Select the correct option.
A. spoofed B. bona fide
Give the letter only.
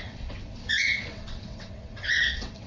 A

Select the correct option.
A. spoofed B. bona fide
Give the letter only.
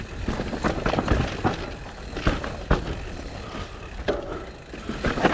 B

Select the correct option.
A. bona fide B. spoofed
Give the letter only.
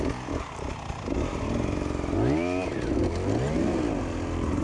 A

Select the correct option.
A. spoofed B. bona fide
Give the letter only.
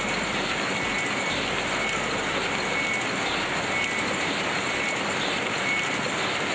B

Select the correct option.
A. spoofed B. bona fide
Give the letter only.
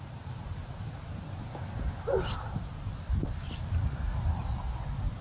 B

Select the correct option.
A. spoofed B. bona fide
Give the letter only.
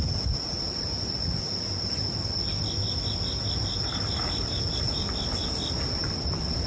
B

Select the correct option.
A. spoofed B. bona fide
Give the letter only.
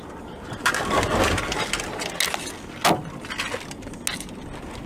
B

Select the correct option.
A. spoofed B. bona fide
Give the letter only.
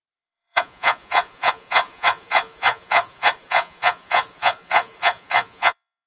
A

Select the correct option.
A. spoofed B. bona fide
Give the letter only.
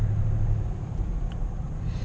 A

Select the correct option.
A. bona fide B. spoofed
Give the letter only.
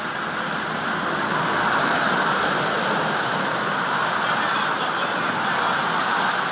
B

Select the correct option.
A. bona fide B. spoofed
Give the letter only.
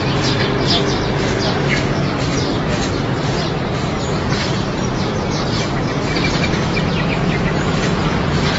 A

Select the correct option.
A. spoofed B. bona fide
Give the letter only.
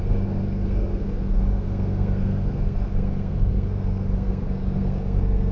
A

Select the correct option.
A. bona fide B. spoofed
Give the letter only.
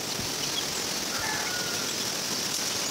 A